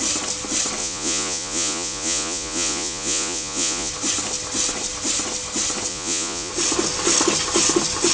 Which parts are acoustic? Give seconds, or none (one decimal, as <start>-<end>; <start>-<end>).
0.0-0.8; 3.9-5.9; 6.5-8.1